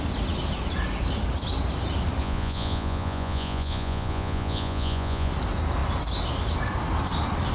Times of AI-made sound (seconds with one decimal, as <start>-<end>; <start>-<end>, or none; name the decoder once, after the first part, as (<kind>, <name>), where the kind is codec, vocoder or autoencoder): 2.2-5.3 (vocoder, Vocos)